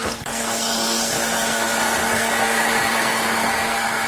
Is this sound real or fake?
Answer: fake